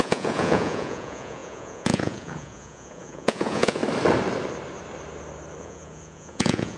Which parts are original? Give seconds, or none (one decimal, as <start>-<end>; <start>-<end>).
3.8-5.6